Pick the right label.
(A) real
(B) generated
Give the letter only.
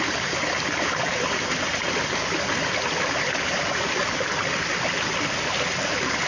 A